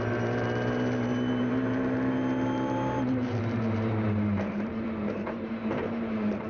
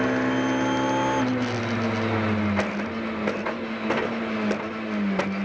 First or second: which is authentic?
second